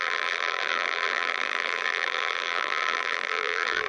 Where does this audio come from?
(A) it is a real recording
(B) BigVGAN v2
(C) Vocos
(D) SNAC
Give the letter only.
B